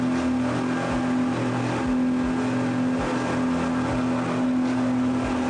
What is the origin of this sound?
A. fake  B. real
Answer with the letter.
B